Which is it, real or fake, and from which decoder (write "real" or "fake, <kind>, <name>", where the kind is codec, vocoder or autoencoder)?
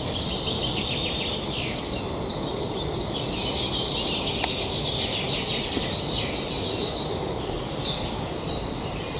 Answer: fake, vocoder, BigVGAN v2